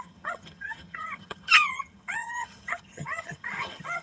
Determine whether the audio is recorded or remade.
remade